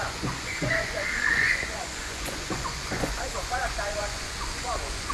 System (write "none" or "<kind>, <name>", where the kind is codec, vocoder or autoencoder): vocoder, Vocos